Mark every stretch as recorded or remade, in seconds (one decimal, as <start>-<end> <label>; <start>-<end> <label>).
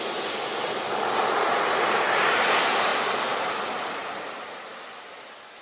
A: 0.0-5.6 recorded